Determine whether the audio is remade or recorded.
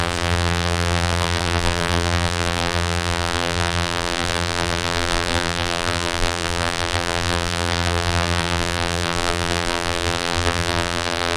remade